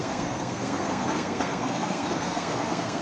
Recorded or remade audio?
remade